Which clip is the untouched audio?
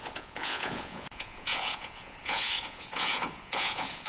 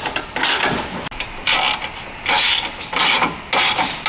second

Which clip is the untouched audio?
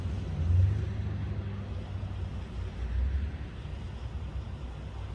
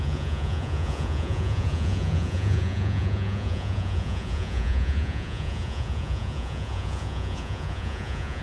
first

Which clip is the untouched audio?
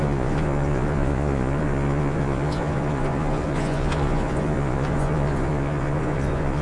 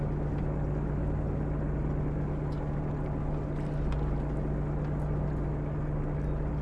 second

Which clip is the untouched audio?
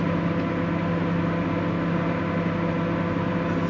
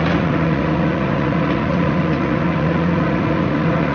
first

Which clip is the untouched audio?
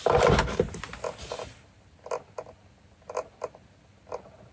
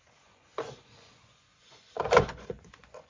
first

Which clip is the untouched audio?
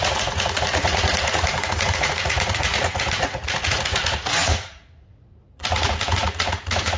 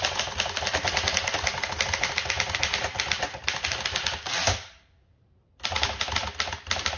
second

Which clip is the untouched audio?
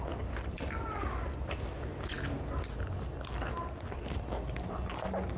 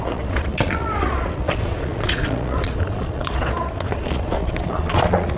first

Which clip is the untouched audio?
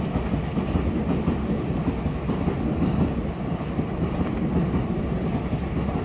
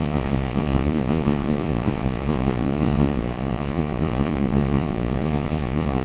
first